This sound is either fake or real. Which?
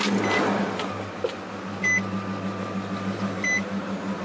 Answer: real